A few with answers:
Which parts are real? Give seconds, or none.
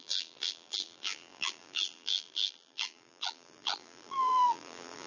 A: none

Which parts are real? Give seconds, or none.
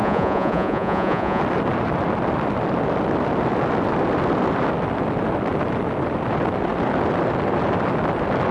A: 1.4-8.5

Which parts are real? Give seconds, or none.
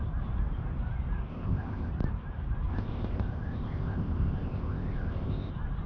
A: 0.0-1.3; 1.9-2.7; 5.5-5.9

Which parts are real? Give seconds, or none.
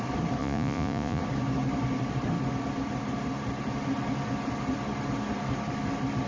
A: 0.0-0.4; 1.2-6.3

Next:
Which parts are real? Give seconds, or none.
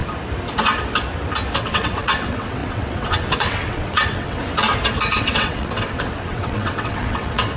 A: 0.0-1.6; 4.4-5.1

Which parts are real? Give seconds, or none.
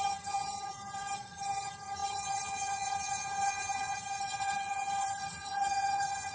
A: none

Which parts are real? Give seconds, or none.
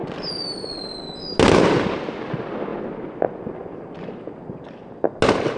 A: 0.0-5.6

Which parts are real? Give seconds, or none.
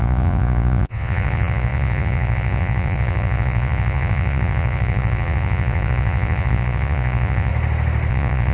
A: 7.5-8.1